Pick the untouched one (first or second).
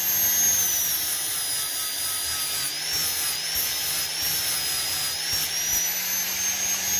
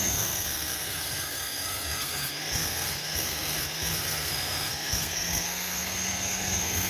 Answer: first